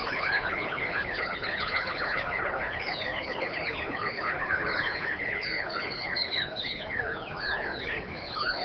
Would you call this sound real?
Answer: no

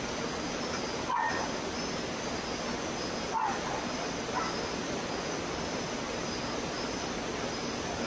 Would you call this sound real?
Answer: yes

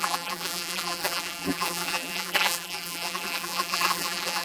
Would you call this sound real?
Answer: no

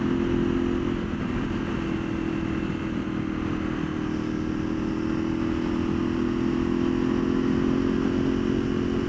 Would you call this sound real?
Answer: yes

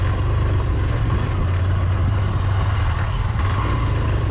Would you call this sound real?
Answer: yes